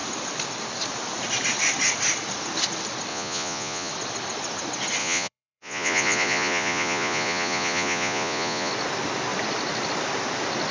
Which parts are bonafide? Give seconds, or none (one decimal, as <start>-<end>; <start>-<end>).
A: 0.0-3.1; 3.9-5.0; 8.7-10.7